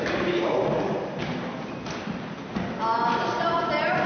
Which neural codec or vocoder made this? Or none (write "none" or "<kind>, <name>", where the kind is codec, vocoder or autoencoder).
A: none